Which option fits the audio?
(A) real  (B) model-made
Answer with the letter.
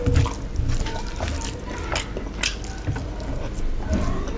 A